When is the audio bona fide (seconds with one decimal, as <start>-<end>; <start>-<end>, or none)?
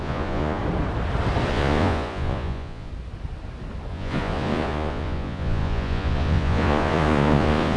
0.6-1.5; 2.9-3.9